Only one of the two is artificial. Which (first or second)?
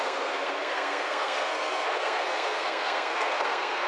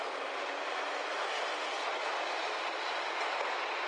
first